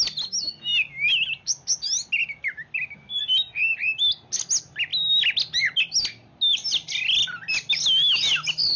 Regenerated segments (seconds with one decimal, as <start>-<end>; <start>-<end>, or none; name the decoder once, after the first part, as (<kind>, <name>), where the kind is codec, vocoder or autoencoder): none